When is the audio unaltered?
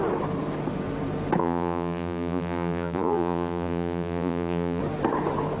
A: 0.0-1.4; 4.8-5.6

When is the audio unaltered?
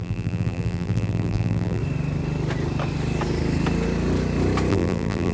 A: 1.8-4.7